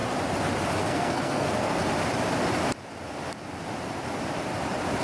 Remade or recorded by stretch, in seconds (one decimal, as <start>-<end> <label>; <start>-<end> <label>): 0.0-0.8 recorded; 0.8-1.8 remade; 1.8-5.0 recorded